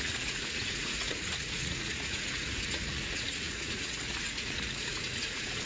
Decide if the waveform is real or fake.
fake